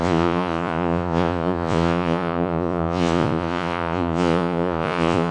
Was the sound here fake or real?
fake